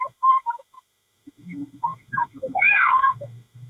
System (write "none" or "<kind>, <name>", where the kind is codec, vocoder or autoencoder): autoencoder, DAC-VAE